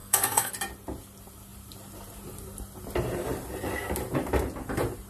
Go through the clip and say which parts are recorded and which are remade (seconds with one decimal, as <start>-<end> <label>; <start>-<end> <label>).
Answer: 0.0-0.5 remade; 0.5-5.1 recorded